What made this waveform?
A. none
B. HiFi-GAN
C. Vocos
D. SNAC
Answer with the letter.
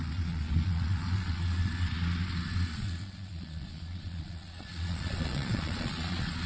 C